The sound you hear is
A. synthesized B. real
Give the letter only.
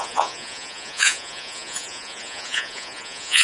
A